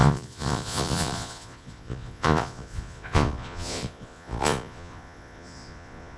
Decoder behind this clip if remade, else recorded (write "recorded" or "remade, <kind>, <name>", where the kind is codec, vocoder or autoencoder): remade, vocoder, Vocos